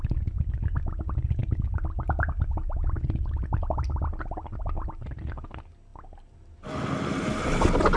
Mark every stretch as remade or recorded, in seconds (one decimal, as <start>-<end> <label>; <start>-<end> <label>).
0.0-8.0 recorded

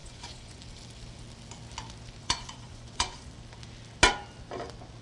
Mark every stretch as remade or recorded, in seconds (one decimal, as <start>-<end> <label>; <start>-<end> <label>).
0.0-0.6 remade; 0.6-2.2 recorded; 2.2-3.3 remade; 3.3-5.0 recorded

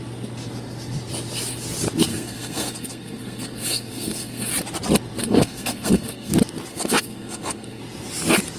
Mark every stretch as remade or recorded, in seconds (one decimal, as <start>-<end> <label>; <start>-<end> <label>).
0.0-2.1 recorded; 2.1-4.5 remade; 4.5-5.2 recorded; 5.2-6.3 remade; 6.3-6.7 recorded; 6.7-7.8 remade; 7.8-8.6 recorded

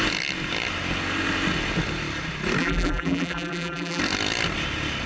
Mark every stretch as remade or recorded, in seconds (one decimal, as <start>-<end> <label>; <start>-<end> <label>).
0.0-2.6 recorded; 2.6-4.0 remade; 4.0-5.1 recorded

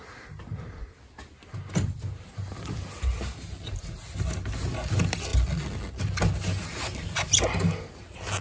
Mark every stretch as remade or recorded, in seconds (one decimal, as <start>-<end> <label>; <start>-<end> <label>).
0.0-8.4 recorded